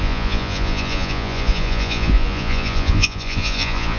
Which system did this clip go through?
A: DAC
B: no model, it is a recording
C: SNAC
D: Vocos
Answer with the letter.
D